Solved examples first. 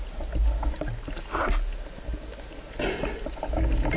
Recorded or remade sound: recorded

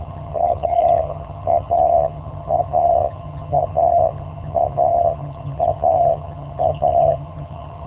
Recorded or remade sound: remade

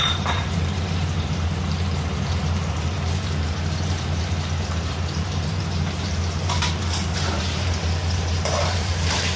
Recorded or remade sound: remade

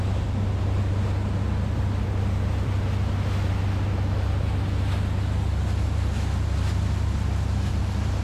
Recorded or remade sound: recorded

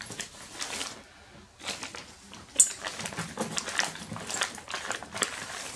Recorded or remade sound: recorded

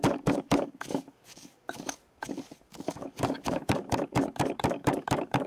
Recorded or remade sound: remade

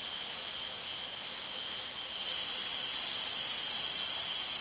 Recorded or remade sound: recorded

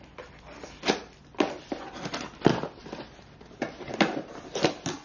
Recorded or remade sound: recorded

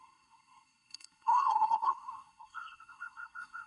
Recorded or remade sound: remade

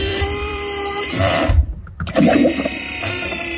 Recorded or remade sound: remade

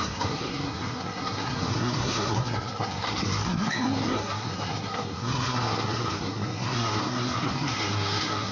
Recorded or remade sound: remade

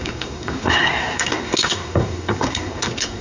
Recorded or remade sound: remade